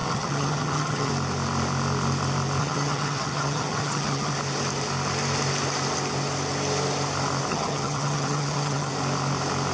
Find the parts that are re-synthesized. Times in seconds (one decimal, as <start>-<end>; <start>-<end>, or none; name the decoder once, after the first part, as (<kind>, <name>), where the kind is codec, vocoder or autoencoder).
0.0-1.1 (vocoder, HiFi-GAN); 2.6-4.3; 7.5-8.9